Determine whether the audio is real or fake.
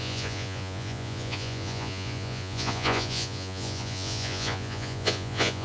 fake